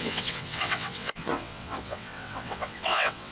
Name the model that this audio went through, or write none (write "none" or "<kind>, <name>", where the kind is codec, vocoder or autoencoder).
vocoder, WaveNeXt